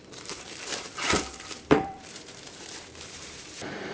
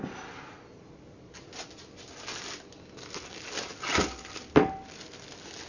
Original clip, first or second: second